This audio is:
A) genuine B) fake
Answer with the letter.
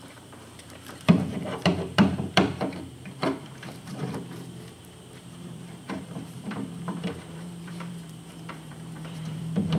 B